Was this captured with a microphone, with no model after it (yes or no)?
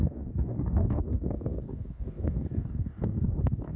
no